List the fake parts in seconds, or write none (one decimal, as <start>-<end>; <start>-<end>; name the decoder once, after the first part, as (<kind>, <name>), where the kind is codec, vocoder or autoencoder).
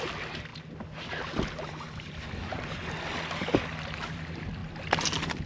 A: none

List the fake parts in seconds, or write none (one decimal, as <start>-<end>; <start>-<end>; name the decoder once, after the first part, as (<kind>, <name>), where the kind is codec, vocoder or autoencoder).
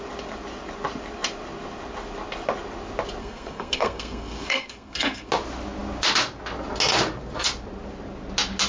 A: 3.2-5.3 (codec, SNAC)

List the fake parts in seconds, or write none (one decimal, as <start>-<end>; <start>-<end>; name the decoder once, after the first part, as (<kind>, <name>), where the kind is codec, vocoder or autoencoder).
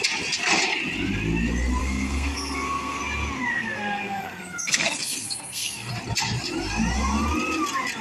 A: 1.8-3.0 (codec, SNAC); 3.5-5.9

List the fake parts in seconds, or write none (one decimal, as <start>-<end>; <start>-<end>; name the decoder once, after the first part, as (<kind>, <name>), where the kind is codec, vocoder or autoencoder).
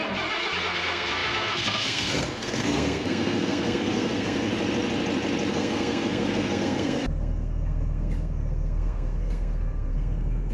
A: 0.6-4.5 (codec, SNAC); 5.5-10.5